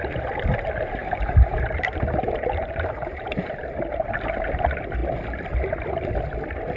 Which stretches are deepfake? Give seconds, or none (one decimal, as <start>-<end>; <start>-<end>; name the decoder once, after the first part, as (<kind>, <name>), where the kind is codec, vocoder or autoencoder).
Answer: 1.0-4.6 (vocoder, BigVGAN v2)